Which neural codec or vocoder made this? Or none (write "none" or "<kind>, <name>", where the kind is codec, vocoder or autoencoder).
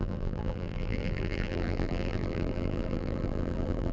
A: vocoder, BigVGAN v2